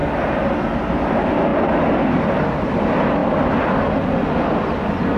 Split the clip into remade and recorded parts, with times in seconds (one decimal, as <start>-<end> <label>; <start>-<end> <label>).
0.0-5.2 recorded